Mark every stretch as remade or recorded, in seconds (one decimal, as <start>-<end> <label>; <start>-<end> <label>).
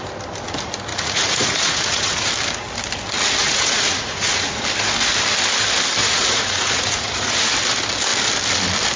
0.0-0.9 recorded; 0.9-2.3 remade; 2.3-3.4 recorded; 3.4-4.6 remade; 4.6-6.0 recorded; 6.0-7.5 remade; 7.5-9.0 recorded